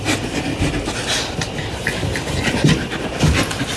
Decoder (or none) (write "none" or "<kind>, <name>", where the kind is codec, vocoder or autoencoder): none